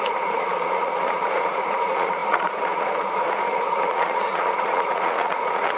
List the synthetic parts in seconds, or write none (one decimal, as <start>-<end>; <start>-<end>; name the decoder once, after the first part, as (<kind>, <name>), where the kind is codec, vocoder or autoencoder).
0.0-5.8 (vocoder, Vocos)